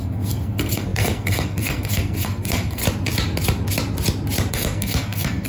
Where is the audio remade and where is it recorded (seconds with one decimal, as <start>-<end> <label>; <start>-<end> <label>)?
0.0-2.8 remade; 2.8-4.5 recorded; 4.5-5.5 remade